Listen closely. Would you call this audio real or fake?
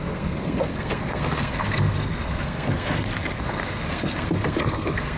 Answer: fake